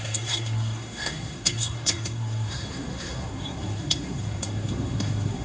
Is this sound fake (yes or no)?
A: yes